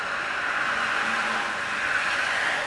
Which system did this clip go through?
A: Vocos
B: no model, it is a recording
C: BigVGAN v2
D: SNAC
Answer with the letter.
A